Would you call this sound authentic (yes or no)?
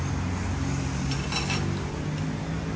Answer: yes